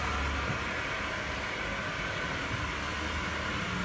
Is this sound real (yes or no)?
yes